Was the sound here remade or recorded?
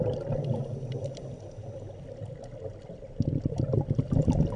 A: recorded